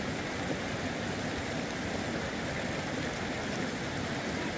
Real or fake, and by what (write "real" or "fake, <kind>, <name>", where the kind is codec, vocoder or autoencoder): real